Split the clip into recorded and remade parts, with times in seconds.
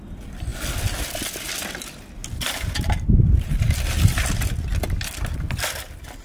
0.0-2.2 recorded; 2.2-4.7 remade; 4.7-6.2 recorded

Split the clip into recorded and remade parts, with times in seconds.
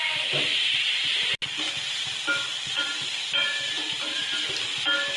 0.0-2.7 recorded; 2.7-4.5 remade; 4.5-5.2 recorded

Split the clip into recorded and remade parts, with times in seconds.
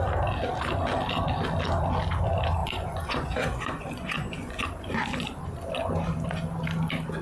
0.0-2.6 recorded; 2.6-4.6 remade; 4.6-7.2 recorded